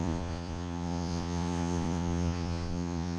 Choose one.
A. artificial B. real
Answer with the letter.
A